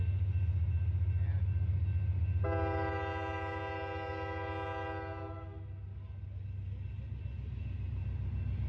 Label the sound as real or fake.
real